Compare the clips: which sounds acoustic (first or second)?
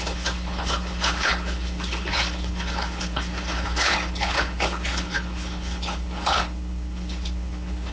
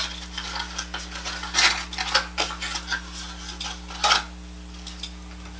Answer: second